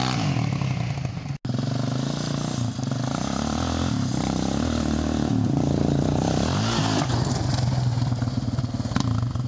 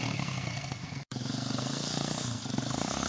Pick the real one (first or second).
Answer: first